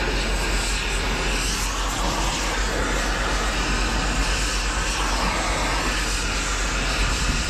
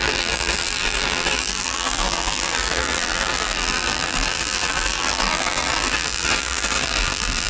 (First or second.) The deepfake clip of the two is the second